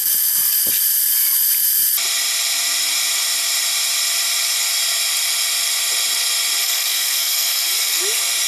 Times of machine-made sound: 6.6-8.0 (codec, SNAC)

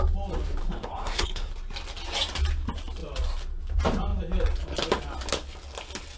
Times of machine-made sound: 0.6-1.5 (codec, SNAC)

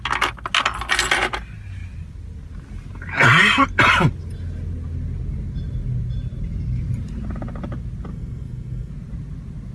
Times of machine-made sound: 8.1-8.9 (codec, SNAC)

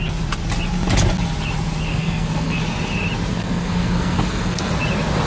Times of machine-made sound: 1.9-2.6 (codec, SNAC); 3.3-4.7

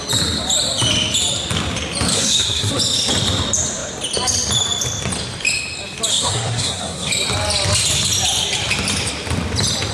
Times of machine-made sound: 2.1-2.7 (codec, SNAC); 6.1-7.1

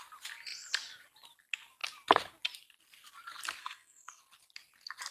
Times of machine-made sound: 3.6-4.2 (codec, SNAC)